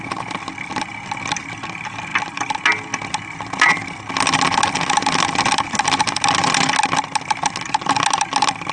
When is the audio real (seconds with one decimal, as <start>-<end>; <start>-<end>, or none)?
0.0-8.7